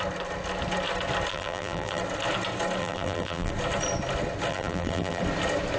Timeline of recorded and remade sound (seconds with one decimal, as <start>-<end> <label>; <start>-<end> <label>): 0.0-1.3 recorded; 1.3-2.0 remade; 2.0-2.8 recorded; 2.8-3.5 remade; 3.5-4.5 recorded; 4.5-5.2 remade; 5.2-5.8 recorded